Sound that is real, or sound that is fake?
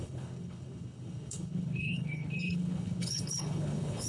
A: fake